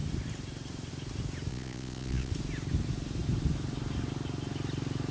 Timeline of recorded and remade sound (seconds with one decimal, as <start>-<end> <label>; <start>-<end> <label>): 0.0-1.5 recorded; 1.5-2.3 remade; 2.3-5.1 recorded